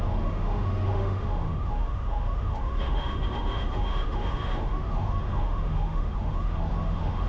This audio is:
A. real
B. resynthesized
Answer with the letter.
B